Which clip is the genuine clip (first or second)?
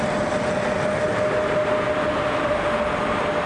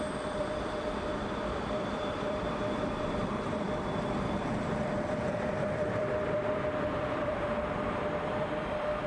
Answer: first